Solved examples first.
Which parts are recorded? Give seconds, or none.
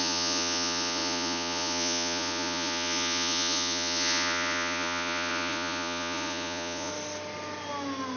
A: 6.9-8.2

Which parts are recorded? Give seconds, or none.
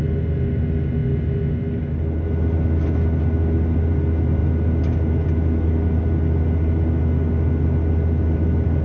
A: 0.0-8.8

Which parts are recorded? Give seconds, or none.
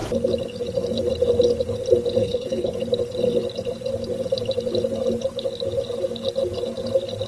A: 0.0-2.2; 2.7-7.3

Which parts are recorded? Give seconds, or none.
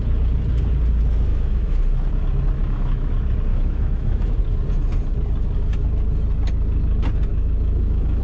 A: 0.0-1.3; 1.8-2.6; 3.1-3.5; 4.4-7.3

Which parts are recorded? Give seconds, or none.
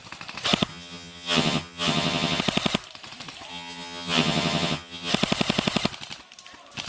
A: 0.0-0.7; 2.4-3.5; 5.1-6.9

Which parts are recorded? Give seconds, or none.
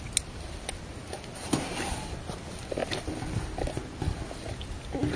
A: 0.0-5.2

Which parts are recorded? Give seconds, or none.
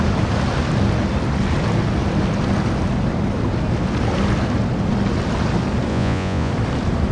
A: 0.0-5.9; 6.5-7.1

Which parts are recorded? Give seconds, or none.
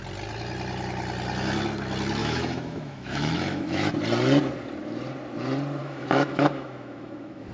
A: 0.0-2.2; 3.9-5.8